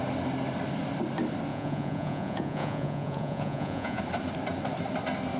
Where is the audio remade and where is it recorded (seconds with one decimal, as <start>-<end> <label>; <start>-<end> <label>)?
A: 0.0-1.5 recorded; 1.5-4.0 remade; 4.0-5.4 recorded

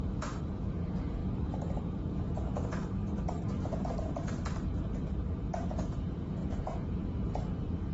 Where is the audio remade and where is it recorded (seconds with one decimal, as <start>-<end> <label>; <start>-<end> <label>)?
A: 0.0-1.2 remade; 1.2-1.8 recorded; 1.8-3.0 remade; 3.0-5.7 recorded; 5.7-7.9 remade

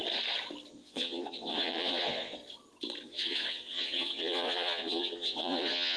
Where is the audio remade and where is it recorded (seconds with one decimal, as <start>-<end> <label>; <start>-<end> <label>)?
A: 0.0-0.7 recorded; 0.7-2.4 remade; 2.4-3.0 recorded; 3.0-6.0 remade

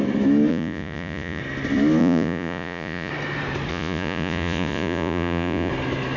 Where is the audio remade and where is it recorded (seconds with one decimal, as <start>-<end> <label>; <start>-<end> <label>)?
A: 0.0-0.5 recorded; 0.5-1.4 remade; 1.4-2.0 recorded; 2.0-3.1 remade; 3.1-3.7 recorded; 3.7-5.7 remade; 5.7-6.2 recorded

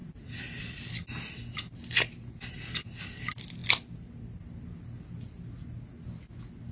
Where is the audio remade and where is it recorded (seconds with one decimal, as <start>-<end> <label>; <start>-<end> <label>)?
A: 0.0-6.7 recorded

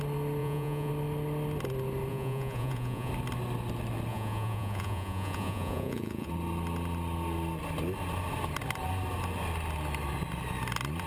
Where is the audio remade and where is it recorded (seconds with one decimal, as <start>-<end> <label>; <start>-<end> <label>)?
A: 0.0-0.4 recorded; 0.4-0.9 remade; 0.9-2.1 recorded; 2.1-3.1 remade; 3.1-4.1 recorded; 4.1-6.3 remade; 6.3-11.1 recorded

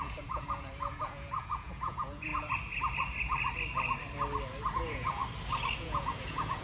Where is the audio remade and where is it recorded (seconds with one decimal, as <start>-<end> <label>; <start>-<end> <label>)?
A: 0.0-2.3 remade; 2.3-4.7 recorded; 4.7-5.2 remade; 5.2-5.8 recorded; 5.8-6.6 remade